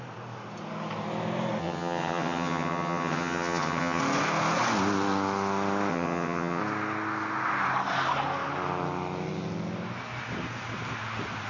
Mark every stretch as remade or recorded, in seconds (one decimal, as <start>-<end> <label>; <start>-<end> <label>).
0.0-1.6 recorded; 1.6-4.0 remade; 4.0-5.9 recorded; 5.9-6.6 remade; 6.6-11.5 recorded